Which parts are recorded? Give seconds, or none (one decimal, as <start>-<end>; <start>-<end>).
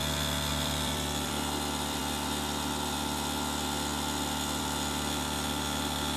0.0-0.5; 2.0-4.6